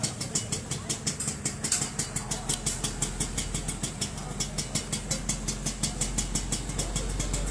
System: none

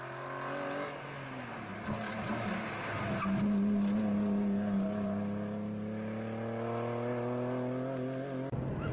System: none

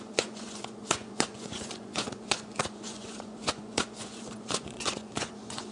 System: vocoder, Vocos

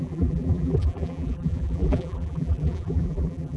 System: vocoder, BigVGAN v2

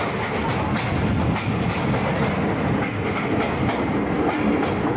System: none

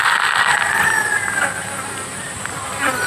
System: none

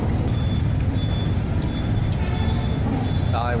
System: none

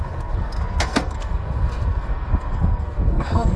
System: codec, SNAC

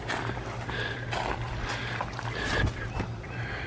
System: none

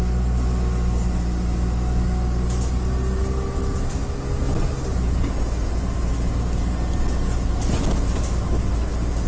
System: none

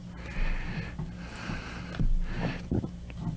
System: none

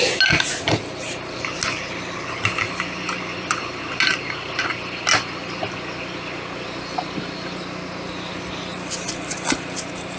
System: none